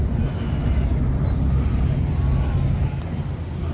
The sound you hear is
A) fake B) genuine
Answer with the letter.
B